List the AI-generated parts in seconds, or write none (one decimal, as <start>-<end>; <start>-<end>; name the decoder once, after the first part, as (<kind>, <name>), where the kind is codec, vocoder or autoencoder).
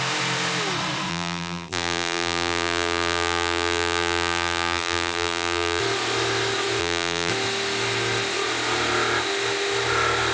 1.1-5.8 (vocoder, BigVGAN v2); 6.8-7.3